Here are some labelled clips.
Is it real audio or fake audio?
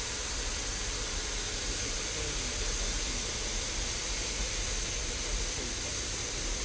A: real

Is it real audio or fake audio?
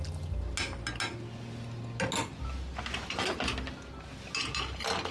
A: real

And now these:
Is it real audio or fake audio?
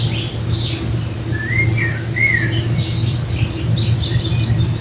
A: real